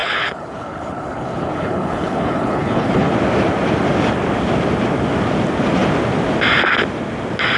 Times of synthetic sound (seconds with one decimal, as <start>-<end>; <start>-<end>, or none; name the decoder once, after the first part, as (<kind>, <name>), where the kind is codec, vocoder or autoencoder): 0.0-3.1 (codec, HILCodec)